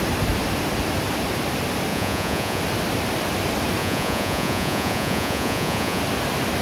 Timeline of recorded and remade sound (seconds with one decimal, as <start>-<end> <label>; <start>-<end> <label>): 0.0-1.9 recorded; 1.9-2.6 remade; 2.6-3.8 recorded; 3.8-6.0 remade; 6.0-6.6 recorded